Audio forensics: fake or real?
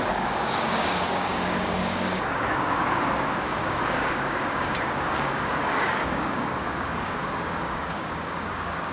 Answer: fake